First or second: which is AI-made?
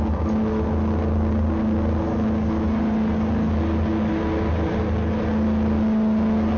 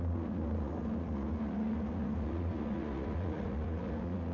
second